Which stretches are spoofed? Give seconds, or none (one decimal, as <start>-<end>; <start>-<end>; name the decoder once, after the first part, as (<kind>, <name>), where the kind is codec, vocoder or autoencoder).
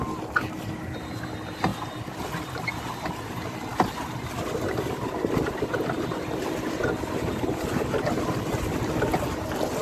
1.7-2.2 (vocoder, BigVGAN v2)